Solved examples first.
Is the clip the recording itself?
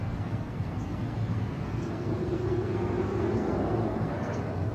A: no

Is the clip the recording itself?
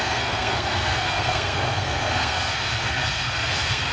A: no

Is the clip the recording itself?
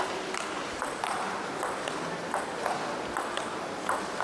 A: yes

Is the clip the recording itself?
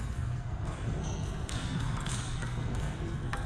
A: no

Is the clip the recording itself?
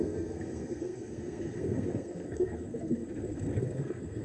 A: no